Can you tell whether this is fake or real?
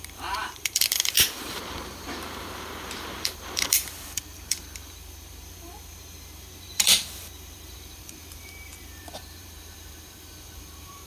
fake